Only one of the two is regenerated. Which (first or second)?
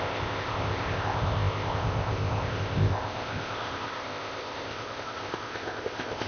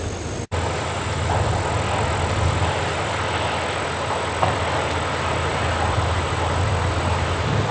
first